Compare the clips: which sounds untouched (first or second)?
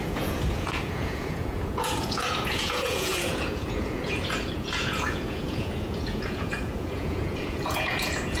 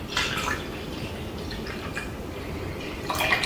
second